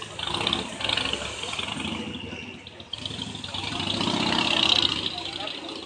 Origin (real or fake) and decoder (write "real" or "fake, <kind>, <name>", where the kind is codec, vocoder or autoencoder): real